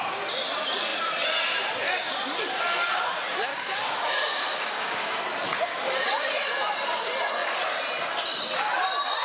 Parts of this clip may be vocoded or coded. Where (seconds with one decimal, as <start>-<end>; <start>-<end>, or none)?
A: 3.5-5.2